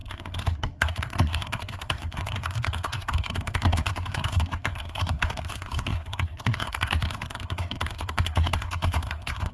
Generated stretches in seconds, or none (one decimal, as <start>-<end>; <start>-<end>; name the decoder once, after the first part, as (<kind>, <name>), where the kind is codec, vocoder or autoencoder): 0.0-9.5 (codec, SNAC)